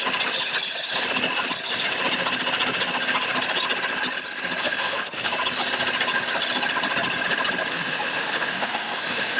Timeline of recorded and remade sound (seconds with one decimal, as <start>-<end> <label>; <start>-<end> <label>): 0.0-4.6 recorded; 4.6-5.3 remade; 5.3-7.7 recorded; 7.7-9.4 remade